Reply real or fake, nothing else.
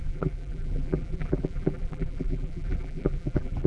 fake